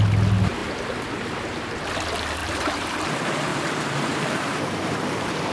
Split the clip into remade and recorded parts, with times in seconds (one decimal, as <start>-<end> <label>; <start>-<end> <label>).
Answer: 0.0-0.6 recorded; 0.6-1.8 remade; 1.8-2.4 recorded; 2.4-3.0 remade; 3.0-3.5 recorded; 3.5-5.5 remade